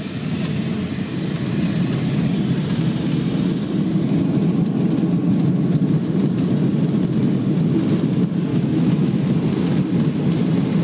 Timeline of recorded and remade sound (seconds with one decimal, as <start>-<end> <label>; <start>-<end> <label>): 0.0-8.5 recorded; 8.5-9.2 remade; 9.2-10.8 recorded